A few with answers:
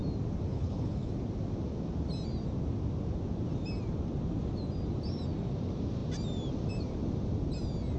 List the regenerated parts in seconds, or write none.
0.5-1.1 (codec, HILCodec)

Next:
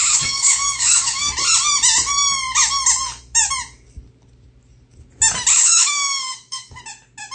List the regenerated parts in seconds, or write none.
0.0-1.3 (codec, DAC); 5.5-6.8

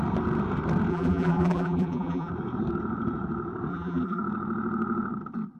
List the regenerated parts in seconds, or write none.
0.9-2.3 (vocoder, BigVGAN v2); 3.7-4.2

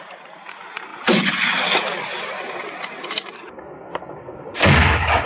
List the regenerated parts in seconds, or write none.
none

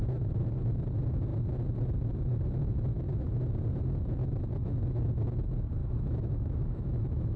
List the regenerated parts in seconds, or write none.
5.8-7.4 (autoencoder, DAC-VAE)

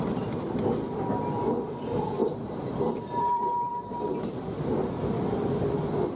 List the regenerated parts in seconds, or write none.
2.2-3.7 (vocoder, BigVGAN v2)

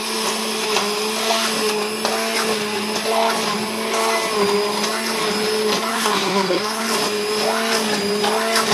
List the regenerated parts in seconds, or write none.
5.9-6.8 (codec, SNAC)